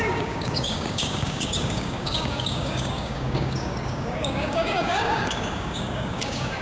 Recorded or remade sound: remade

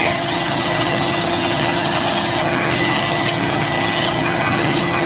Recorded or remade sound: remade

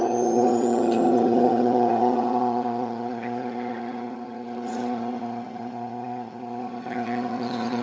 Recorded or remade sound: remade